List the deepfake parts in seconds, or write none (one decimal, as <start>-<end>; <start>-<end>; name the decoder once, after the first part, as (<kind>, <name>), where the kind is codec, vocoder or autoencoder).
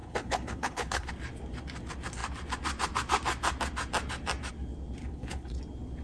0.0-1.1 (codec, HILCodec); 5.0-5.6